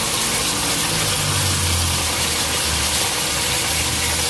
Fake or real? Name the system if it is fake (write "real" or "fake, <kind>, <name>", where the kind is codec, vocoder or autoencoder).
real